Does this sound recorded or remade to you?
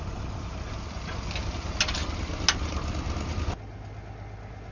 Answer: recorded